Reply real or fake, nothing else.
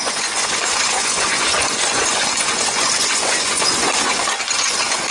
fake